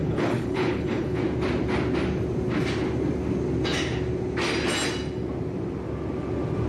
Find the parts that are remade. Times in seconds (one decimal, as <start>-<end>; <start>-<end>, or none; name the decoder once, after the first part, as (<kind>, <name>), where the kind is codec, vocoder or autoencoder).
0.0-1.2 (codec, HILCodec)